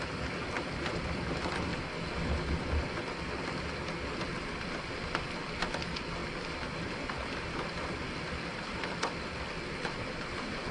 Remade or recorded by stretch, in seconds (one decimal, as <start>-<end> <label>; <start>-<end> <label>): 0.0-10.7 recorded